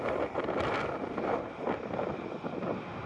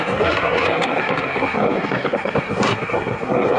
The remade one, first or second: second